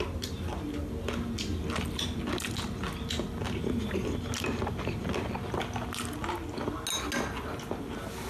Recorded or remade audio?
recorded